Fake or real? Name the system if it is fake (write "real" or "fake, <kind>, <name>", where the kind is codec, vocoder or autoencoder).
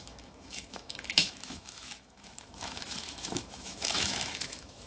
fake, autoencoder, DAC-VAE